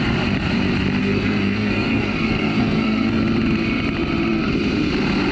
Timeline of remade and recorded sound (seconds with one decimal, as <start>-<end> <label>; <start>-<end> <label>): 0.0-1.0 recorded; 1.0-3.2 remade; 3.2-5.3 recorded